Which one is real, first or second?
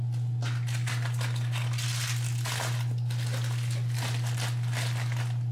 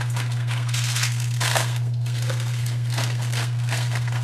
first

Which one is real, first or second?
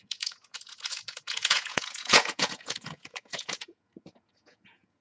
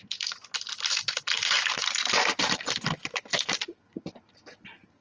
second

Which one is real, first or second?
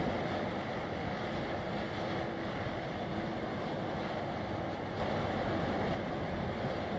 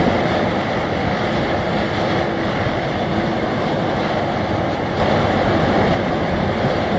first